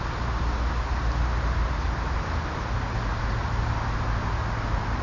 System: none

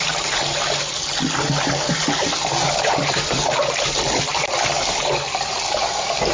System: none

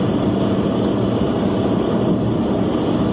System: none